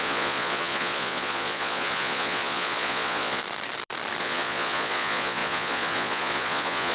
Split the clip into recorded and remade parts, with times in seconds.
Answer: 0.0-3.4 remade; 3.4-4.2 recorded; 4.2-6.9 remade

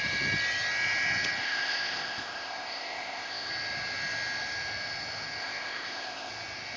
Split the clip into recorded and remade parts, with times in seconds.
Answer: 0.0-1.4 recorded; 1.4-3.5 remade; 3.5-5.4 recorded; 5.4-6.3 remade; 6.3-6.8 recorded

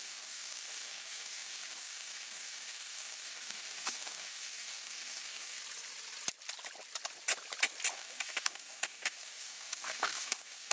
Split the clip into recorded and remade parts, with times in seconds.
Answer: 0.0-5.6 remade; 5.6-7.9 recorded; 7.9-10.7 remade

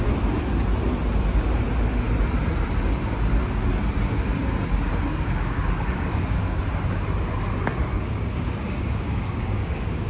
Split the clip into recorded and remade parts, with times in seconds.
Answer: 0.0-5.1 recorded; 5.1-6.6 remade; 6.6-7.9 recorded; 7.9-10.1 remade

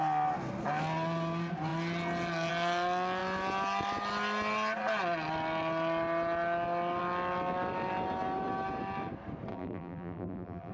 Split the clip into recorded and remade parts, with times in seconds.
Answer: 0.0-9.5 recorded; 9.5-10.7 remade